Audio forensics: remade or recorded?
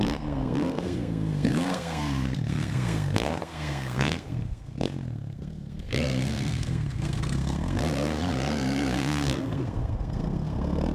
remade